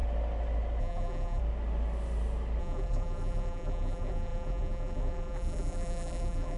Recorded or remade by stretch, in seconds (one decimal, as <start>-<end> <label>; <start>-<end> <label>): 0.0-0.8 recorded; 0.8-1.4 remade; 1.4-2.6 recorded; 2.6-6.6 remade